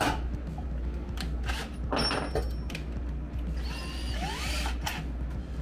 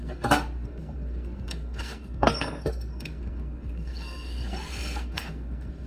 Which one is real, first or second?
first